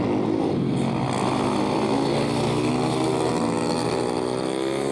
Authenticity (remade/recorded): recorded